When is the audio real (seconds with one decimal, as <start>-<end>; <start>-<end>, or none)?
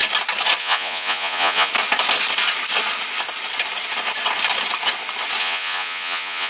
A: 0.0-0.6; 1.7-5.4